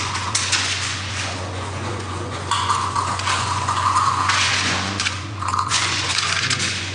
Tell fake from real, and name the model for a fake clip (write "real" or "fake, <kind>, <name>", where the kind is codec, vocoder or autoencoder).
fake, vocoder, Vocos